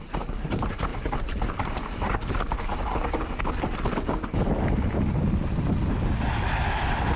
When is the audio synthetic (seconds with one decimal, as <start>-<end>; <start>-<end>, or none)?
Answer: 0.0-2.7